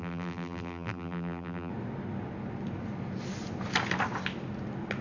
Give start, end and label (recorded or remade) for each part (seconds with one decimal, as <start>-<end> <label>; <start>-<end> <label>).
0.0-1.7 remade; 1.7-5.0 recorded